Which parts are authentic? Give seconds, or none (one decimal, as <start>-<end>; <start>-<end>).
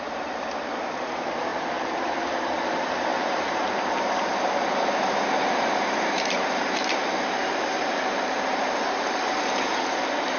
none